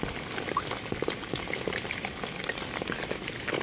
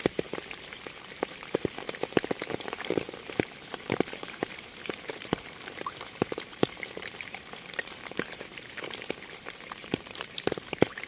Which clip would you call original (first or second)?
first